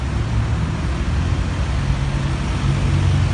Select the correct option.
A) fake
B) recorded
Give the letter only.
B